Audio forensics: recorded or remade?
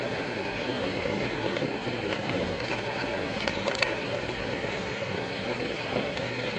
remade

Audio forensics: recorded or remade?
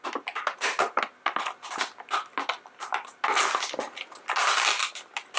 recorded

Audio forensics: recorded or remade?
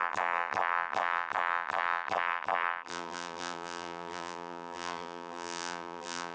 remade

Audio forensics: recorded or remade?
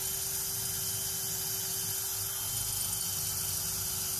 recorded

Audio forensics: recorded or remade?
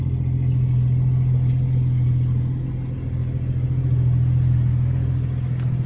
recorded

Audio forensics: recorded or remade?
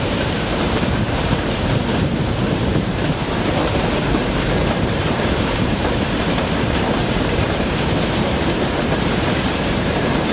remade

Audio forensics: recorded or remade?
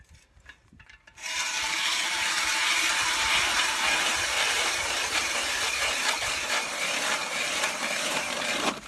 remade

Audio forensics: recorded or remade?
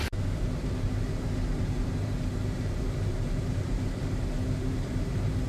remade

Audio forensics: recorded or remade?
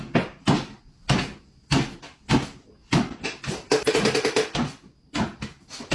recorded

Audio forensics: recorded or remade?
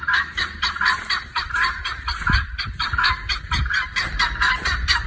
recorded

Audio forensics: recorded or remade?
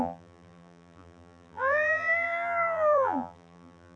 remade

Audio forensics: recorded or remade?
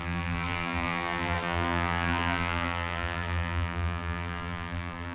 remade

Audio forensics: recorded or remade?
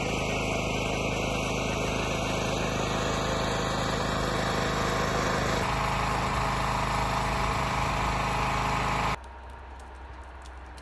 recorded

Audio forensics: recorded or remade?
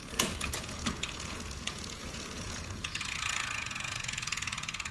remade